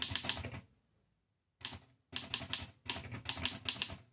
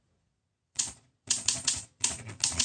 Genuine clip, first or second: first